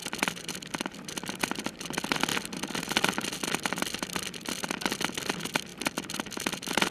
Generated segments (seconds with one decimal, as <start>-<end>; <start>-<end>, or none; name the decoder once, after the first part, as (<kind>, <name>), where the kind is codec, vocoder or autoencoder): none